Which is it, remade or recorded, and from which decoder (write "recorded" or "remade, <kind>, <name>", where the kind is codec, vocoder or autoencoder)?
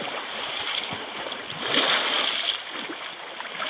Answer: recorded